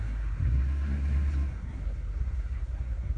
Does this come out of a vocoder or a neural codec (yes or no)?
yes